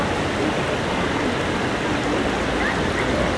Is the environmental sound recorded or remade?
recorded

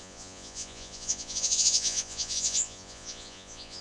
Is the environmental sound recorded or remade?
remade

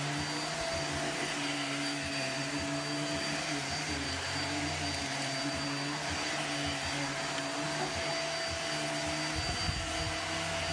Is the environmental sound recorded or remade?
recorded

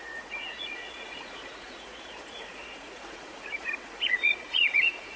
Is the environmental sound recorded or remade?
remade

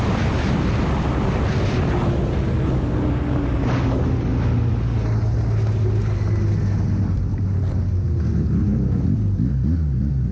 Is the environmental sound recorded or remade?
recorded